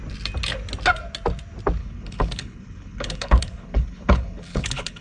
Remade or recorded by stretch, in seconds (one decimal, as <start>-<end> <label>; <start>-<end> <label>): 0.0-1.8 recorded; 1.8-5.0 remade